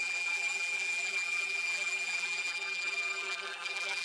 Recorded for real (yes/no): no